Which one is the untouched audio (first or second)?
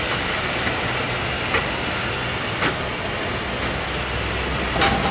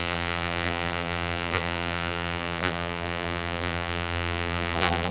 first